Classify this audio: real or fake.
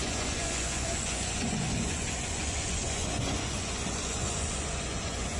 fake